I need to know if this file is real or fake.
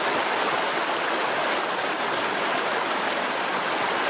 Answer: real